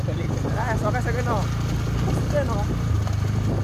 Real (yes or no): yes